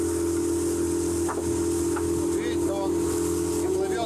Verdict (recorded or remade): recorded